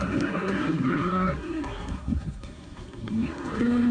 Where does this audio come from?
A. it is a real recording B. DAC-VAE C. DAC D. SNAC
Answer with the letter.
D